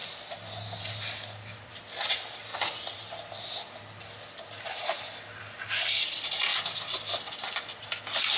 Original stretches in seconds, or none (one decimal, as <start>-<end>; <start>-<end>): 0.0-8.4